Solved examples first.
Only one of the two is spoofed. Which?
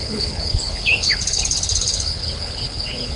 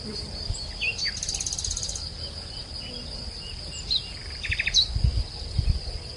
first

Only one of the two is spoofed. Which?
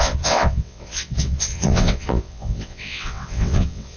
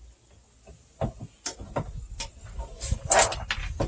first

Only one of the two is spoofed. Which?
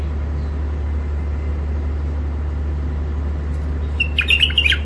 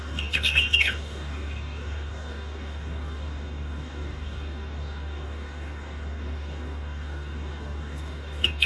second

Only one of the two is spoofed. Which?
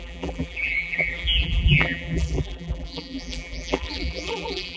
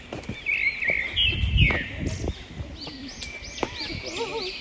first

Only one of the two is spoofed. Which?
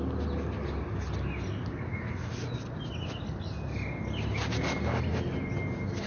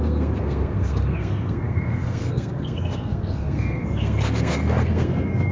second